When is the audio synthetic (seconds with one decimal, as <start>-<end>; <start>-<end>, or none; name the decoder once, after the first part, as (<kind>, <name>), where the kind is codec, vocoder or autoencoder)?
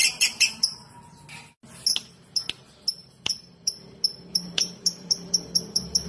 0.0-0.9 (vocoder, BigVGAN v2); 3.0-3.7; 4.3-6.1